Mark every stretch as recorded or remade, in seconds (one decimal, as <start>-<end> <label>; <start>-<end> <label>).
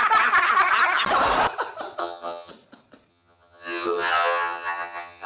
0.0-2.0 recorded; 2.0-2.5 remade; 2.5-3.1 recorded; 3.1-5.3 remade